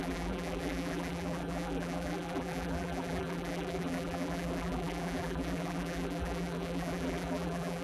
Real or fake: fake